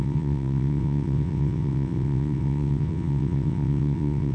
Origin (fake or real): fake